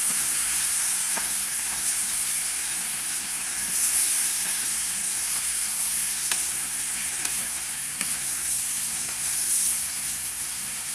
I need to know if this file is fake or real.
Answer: fake